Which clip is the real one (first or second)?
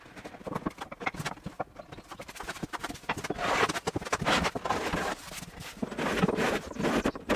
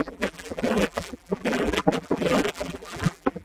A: first